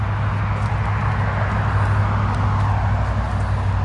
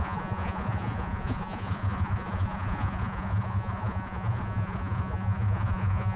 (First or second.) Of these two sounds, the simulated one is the second